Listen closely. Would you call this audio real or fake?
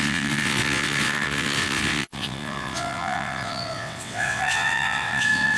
fake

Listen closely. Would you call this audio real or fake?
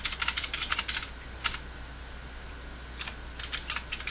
real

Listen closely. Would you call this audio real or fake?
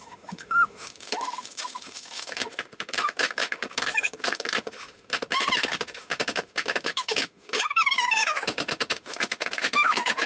fake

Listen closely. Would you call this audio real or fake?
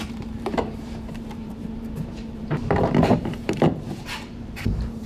fake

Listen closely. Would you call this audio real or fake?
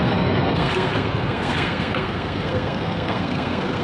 fake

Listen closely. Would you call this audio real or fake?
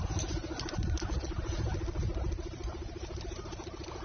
fake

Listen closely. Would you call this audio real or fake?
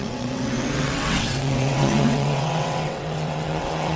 fake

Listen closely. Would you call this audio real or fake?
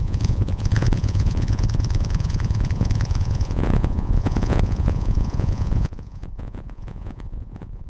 fake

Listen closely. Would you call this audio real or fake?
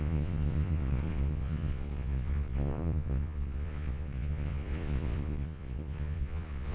fake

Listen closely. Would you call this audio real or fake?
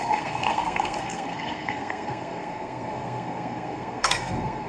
fake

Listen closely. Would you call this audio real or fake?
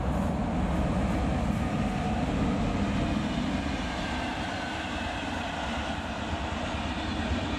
real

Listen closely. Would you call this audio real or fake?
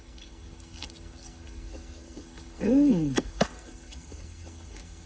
fake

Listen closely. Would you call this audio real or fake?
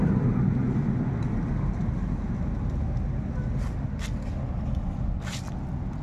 real